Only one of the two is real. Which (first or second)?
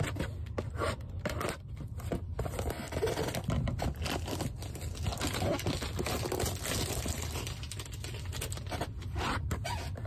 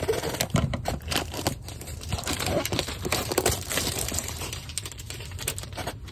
first